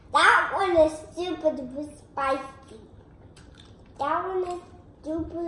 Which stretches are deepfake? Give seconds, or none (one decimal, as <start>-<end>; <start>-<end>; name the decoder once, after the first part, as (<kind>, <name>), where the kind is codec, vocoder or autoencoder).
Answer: none